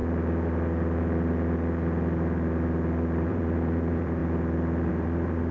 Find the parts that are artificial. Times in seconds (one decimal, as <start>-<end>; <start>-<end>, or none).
3.3-4.2; 4.9-5.5